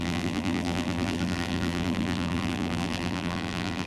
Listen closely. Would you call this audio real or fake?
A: fake